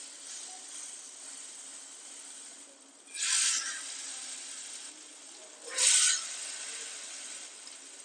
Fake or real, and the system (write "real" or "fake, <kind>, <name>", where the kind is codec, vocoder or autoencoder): real